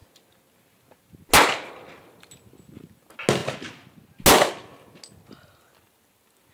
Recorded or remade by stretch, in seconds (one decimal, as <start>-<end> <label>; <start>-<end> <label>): 0.0-6.5 recorded